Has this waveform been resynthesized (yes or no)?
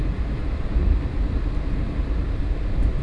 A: no